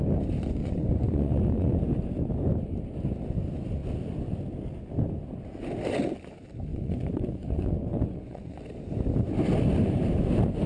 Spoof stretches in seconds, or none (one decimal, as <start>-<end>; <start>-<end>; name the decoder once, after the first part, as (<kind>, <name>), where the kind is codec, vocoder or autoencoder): 0.6-1.8 (vocoder, Vocos); 6.7-8.6